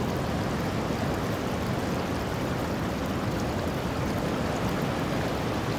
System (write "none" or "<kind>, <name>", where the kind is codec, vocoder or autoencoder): none